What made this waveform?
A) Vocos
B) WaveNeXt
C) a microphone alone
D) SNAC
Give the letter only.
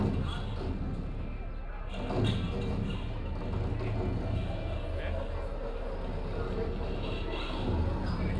C